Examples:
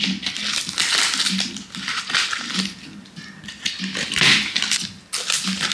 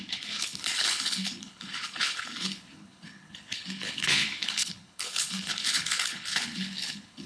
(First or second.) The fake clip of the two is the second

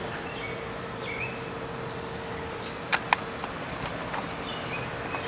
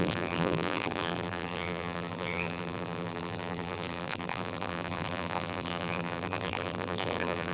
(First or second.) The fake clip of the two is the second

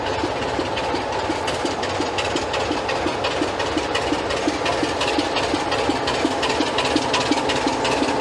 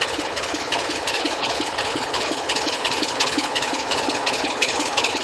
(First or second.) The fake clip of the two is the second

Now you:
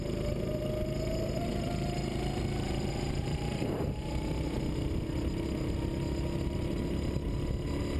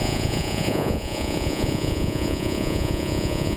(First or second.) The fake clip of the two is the second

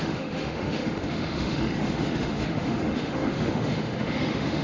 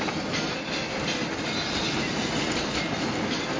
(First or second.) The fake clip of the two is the first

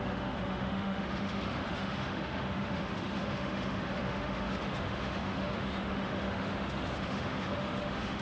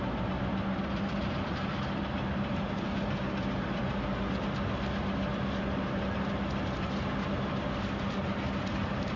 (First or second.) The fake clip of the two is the first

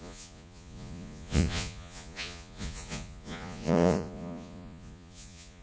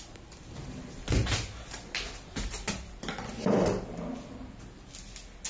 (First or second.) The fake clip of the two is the first